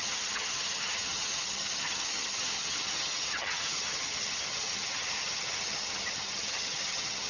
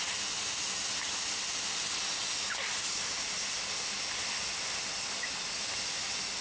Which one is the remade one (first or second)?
first